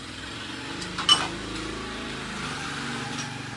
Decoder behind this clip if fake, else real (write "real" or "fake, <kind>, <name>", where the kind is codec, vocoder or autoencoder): real